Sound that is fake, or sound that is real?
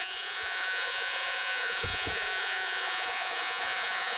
fake